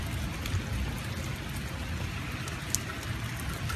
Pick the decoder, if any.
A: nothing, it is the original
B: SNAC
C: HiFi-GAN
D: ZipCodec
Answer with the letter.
A